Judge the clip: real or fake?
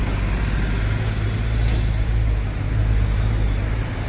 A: real